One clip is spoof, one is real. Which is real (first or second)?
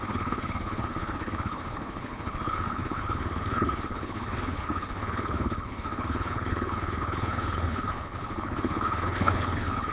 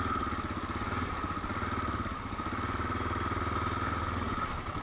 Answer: second